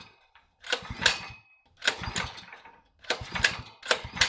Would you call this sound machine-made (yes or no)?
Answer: no